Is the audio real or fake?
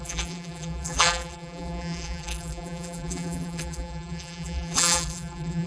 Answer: fake